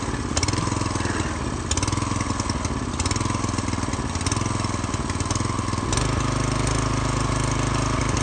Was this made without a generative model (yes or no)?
yes